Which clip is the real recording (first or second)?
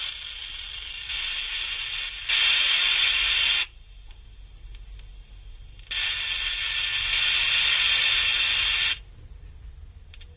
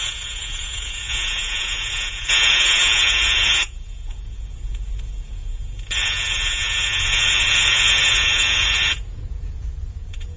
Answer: first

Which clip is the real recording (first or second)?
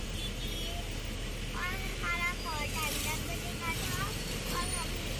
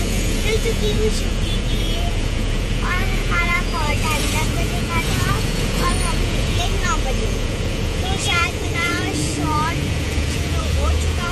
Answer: first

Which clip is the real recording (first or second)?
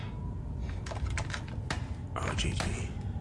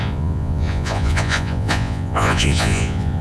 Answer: first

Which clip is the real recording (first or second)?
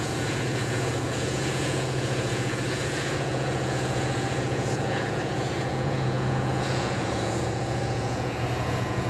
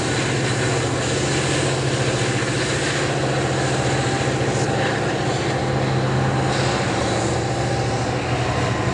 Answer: second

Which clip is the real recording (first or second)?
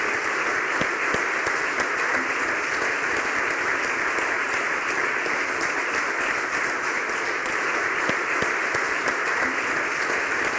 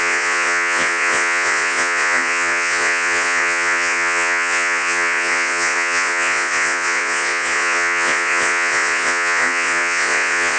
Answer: first